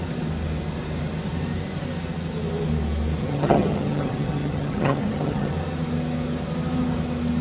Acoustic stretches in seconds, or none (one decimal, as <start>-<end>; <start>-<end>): 0.0-3.2; 5.5-7.4